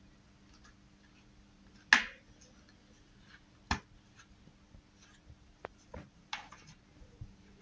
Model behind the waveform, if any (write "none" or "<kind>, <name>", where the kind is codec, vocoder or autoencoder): none